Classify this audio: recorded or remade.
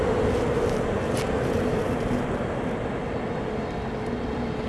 recorded